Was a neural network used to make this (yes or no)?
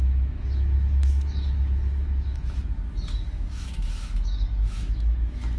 yes